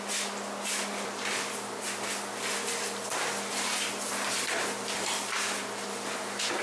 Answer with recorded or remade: recorded